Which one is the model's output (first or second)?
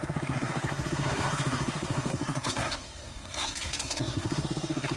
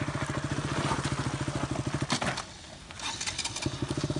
first